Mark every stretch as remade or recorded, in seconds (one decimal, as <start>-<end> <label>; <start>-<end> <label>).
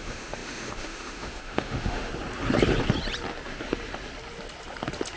0.0-2.1 remade; 2.1-5.2 recorded